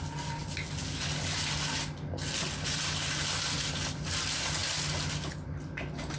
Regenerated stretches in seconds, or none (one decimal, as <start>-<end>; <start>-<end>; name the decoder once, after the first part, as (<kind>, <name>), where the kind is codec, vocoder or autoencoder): none